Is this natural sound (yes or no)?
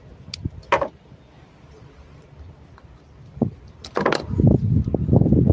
yes